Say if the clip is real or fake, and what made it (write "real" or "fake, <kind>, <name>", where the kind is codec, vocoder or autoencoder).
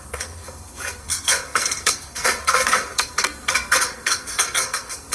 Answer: fake, codec, SNAC